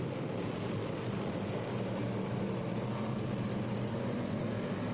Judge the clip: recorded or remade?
recorded